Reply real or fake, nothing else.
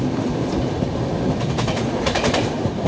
real